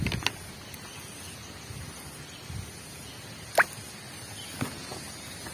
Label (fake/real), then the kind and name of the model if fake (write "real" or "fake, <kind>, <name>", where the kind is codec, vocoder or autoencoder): real